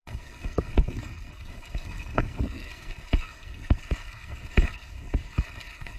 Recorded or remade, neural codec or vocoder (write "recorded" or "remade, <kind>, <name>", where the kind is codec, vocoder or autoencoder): remade, codec, SNAC